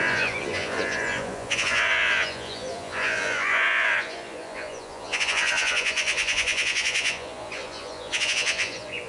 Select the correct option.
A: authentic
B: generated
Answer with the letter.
B